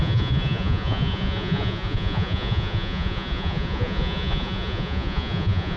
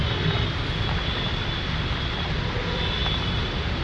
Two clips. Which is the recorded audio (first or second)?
second